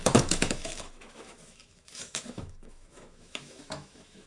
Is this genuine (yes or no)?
no